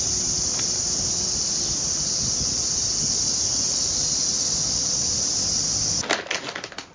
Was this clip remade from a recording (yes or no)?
no